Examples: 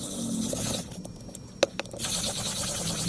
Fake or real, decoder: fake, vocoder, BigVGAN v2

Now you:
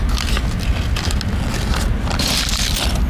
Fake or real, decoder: real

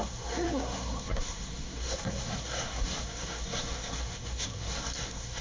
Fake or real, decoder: fake, codec, SNAC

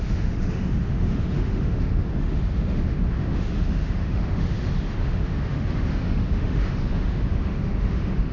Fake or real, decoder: fake, autoencoder, DAC-VAE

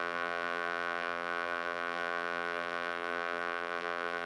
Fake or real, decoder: fake, vocoder, BigVGAN v2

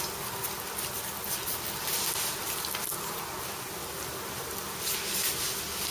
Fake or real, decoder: real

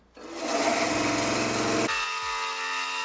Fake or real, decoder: real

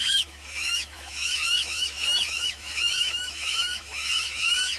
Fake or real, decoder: fake, autoencoder, DAC-VAE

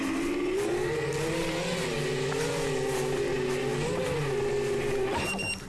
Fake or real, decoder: real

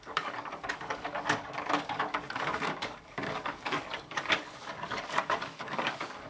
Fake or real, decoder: fake, codec, DAC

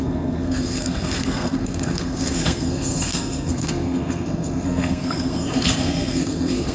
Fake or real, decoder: fake, codec, SNAC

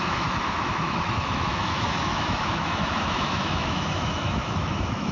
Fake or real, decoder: fake, autoencoder, DAC-VAE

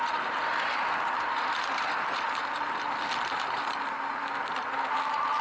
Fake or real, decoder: real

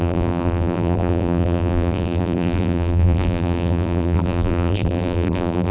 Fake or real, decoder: fake, vocoder, BigVGAN v2